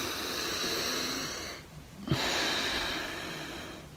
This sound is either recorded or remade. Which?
recorded